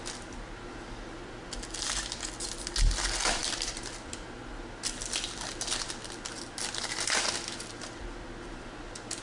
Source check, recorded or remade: recorded